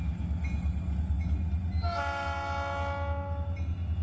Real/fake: real